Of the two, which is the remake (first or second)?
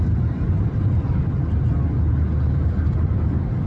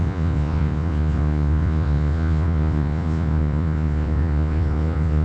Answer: second